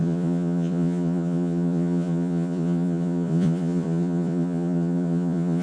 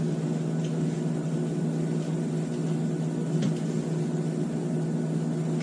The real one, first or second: second